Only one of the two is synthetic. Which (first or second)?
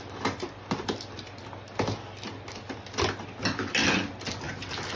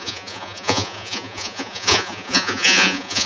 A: second